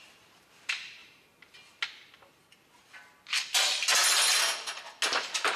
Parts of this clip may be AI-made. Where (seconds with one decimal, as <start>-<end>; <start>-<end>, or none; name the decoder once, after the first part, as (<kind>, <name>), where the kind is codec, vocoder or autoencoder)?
none